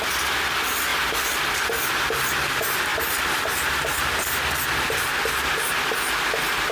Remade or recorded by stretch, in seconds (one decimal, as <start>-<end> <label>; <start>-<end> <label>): 0.0-0.9 recorded; 0.9-1.9 remade; 1.9-6.7 recorded